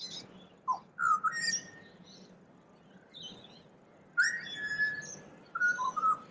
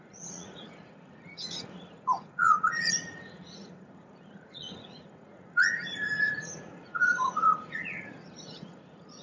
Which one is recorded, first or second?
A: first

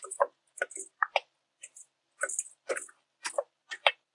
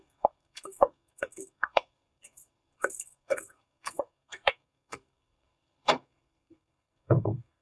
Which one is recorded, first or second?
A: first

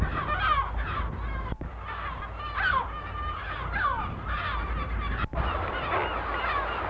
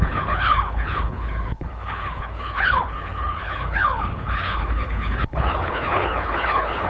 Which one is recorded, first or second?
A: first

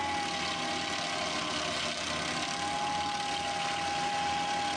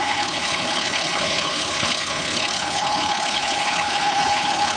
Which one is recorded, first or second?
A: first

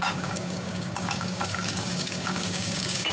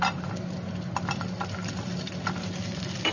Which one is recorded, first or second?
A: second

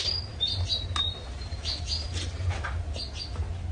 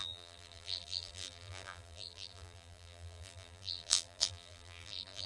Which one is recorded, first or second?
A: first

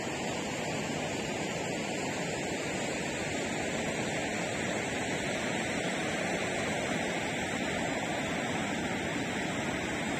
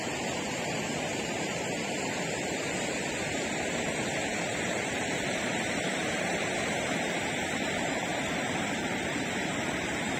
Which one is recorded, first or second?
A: first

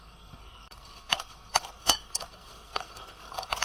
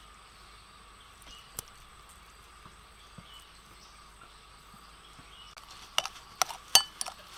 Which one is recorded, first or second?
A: second